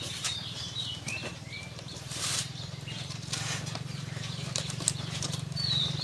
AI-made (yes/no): yes